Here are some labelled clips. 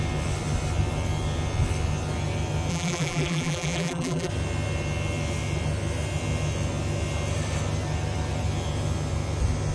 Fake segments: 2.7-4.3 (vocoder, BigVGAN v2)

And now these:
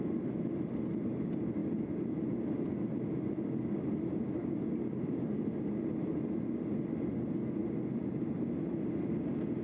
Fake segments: none

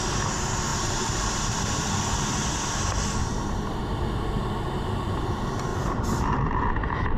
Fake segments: 0.7-1.7 (vocoder, BigVGAN v2); 3.2-3.8

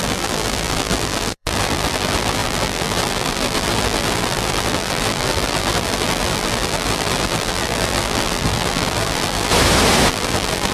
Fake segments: 0.0-9.5 (vocoder, BigVGAN v2); 10.1-10.7